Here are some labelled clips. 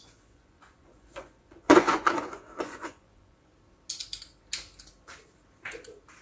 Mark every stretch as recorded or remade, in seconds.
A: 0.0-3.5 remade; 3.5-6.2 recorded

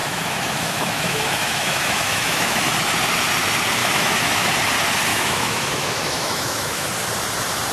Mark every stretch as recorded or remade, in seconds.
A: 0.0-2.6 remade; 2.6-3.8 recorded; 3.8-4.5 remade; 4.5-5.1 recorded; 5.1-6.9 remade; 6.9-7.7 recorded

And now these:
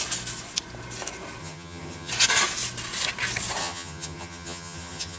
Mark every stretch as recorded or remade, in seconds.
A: 0.0-1.4 recorded; 1.4-2.1 remade; 2.1-3.6 recorded; 3.6-5.2 remade

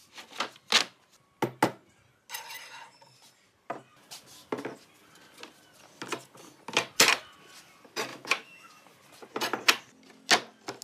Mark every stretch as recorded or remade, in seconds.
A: 0.0-8.1 recorded; 8.1-8.7 remade; 8.7-10.8 recorded